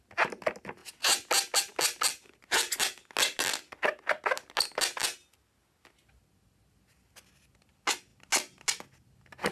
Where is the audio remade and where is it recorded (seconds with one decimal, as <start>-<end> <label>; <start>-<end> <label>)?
0.0-9.5 recorded